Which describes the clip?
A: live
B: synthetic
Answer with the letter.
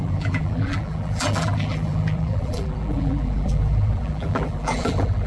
B